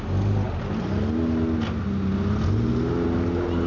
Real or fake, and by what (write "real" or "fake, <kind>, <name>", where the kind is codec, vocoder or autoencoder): real